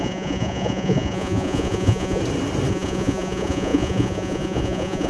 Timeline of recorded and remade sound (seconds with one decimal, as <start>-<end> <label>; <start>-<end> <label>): 0.0-2.2 remade; 2.2-2.7 recorded; 2.7-5.1 remade